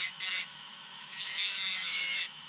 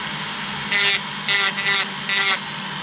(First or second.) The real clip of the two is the second